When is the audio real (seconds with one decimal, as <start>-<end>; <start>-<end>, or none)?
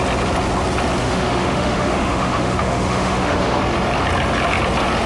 0.0-1.0; 3.6-5.1